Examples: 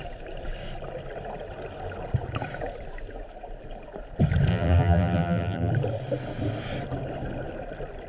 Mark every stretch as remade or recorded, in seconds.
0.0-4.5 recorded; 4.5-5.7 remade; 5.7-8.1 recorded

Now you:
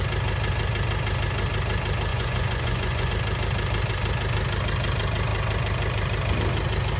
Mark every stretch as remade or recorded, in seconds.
0.0-2.1 recorded; 2.1-3.1 remade; 3.1-7.0 recorded

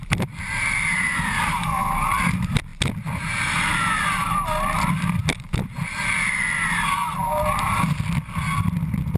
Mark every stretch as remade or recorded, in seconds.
0.0-2.7 remade; 2.7-4.0 recorded; 4.0-5.2 remade; 5.2-8.7 recorded; 8.7-9.2 remade

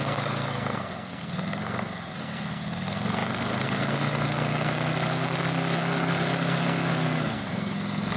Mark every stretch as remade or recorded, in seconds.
0.0-8.2 remade

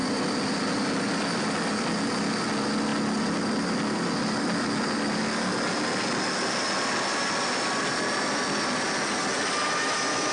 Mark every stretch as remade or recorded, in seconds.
0.0-10.3 recorded

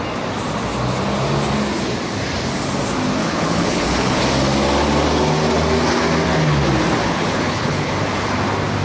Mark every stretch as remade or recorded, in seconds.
0.0-3.2 recorded; 3.2-4.2 remade; 4.2-7.0 recorded; 7.0-7.9 remade; 7.9-8.8 recorded

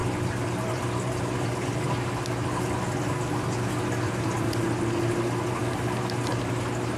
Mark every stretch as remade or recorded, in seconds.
0.0-7.0 recorded

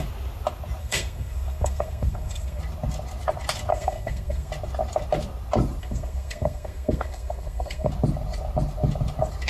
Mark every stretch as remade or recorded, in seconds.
0.0-0.8 recorded; 0.8-2.6 remade; 2.6-3.7 recorded; 3.7-4.5 remade; 4.5-5.8 recorded; 5.8-7.9 remade; 7.9-9.5 recorded